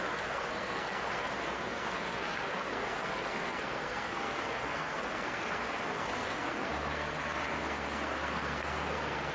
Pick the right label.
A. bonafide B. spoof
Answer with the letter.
B